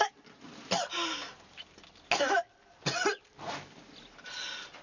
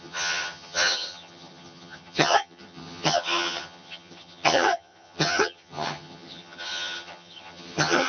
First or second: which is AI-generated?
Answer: second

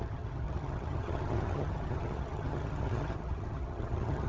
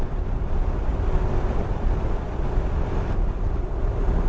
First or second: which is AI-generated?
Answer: first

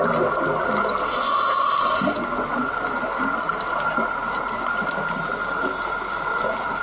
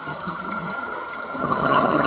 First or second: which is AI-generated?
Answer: second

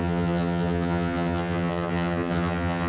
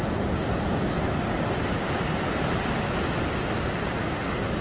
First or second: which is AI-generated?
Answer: first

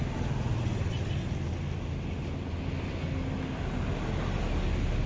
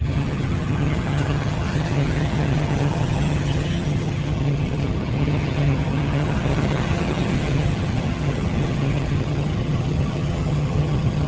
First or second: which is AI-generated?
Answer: second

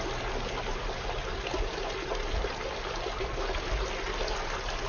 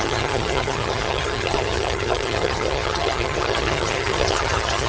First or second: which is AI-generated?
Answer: second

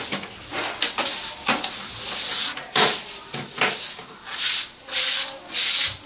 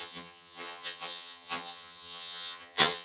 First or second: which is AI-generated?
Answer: second